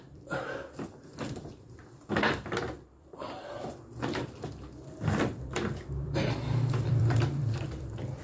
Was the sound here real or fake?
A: fake